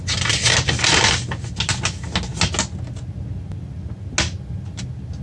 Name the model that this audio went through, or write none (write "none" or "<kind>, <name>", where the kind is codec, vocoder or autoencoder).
none